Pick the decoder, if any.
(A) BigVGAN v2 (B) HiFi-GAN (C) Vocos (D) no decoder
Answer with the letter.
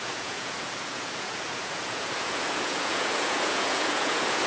C